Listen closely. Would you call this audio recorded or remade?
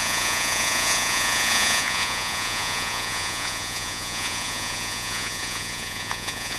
remade